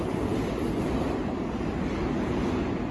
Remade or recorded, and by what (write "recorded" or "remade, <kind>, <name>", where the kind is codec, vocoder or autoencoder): recorded